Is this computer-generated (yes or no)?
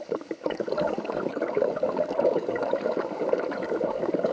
yes